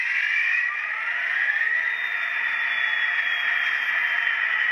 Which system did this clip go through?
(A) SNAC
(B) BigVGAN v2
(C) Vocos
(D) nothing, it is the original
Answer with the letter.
D